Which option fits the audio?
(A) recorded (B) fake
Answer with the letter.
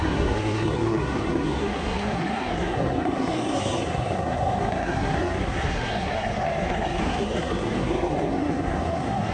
B